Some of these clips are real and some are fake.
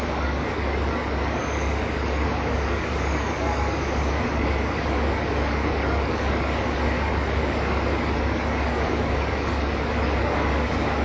fake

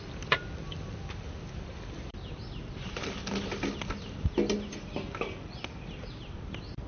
real